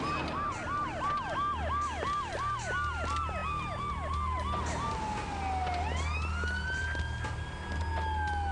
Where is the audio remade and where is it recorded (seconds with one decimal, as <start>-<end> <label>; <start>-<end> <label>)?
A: 0.0-8.5 recorded